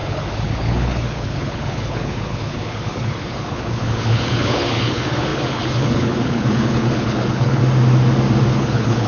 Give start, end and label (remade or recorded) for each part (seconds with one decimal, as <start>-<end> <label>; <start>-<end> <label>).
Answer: 0.0-7.6 remade; 7.6-8.5 recorded; 8.5-9.1 remade